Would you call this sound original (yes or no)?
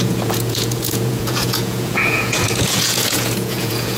no